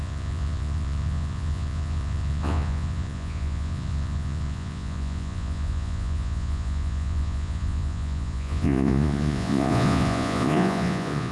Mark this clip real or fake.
fake